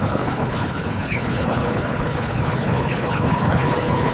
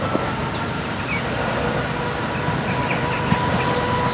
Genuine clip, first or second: second